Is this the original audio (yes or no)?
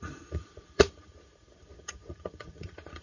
no